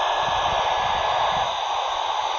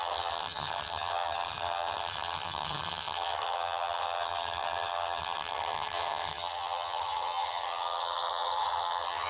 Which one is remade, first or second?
second